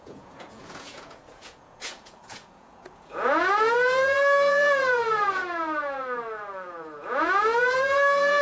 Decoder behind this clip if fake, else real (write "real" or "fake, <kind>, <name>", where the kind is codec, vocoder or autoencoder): fake, vocoder, Vocos